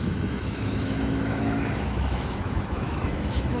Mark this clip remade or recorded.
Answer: remade